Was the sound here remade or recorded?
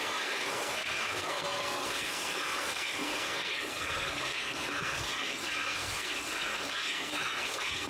remade